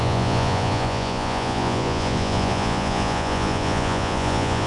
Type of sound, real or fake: fake